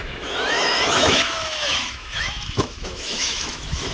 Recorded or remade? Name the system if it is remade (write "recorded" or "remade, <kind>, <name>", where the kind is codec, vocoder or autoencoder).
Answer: remade, autoencoder, DAC-VAE